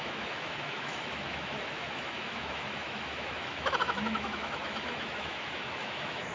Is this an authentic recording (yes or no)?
no